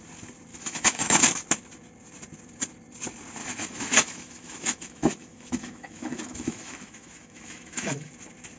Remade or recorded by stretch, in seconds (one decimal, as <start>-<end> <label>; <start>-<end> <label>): 0.0-0.5 recorded; 0.5-1.2 remade; 1.2-3.4 recorded; 3.4-8.1 remade; 8.1-8.6 recorded